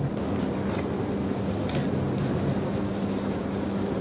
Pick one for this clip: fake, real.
real